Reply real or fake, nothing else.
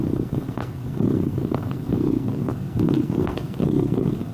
fake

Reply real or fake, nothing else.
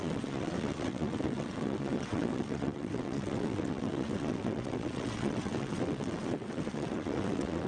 fake